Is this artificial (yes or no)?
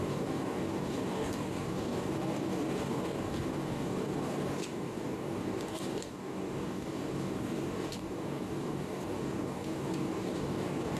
yes